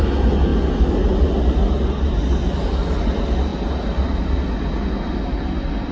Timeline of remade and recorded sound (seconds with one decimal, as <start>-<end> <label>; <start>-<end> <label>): 0.0-5.9 recorded